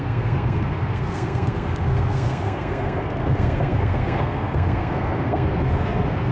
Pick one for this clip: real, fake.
fake